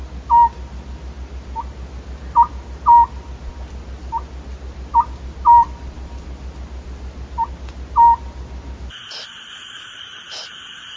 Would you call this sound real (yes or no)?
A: yes